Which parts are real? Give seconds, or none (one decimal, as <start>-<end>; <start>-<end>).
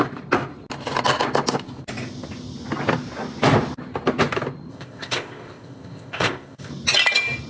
0.0-4.7; 6.7-7.5